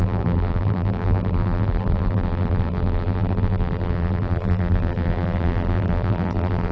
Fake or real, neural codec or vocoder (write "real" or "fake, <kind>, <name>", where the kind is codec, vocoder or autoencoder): fake, vocoder, BigVGAN v2